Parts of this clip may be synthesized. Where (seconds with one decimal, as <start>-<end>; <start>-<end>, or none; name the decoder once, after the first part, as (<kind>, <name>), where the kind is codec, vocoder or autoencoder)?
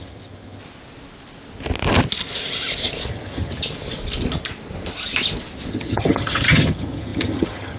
0.0-0.6 (vocoder, HiFi-GAN); 3.1-3.5; 5.7-7.8